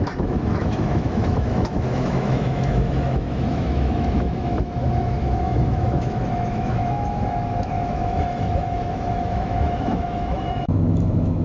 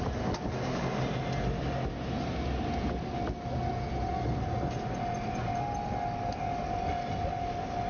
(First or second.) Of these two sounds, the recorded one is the second